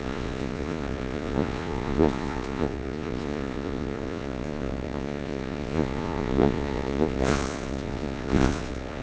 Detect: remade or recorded remade